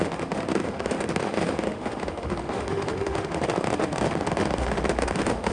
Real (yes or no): no